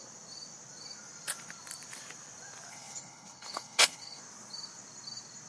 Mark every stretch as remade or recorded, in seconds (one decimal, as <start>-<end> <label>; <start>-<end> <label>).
0.0-2.7 recorded; 2.7-4.2 remade; 4.2-5.5 recorded